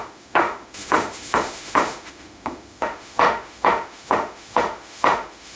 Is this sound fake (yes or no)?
yes